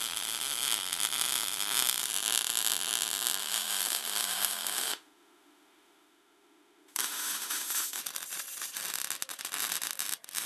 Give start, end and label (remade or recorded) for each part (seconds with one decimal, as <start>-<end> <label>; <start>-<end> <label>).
0.0-3.4 recorded; 3.4-8.0 remade; 8.0-10.5 recorded